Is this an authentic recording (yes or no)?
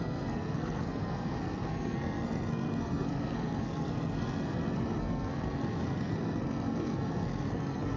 no